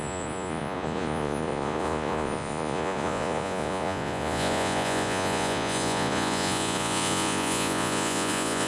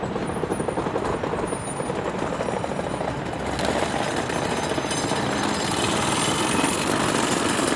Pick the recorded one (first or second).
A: second